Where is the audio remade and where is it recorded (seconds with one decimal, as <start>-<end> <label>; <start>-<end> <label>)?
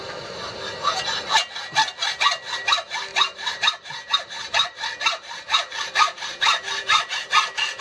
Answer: 0.0-3.1 recorded; 3.1-7.2 remade; 7.2-7.8 recorded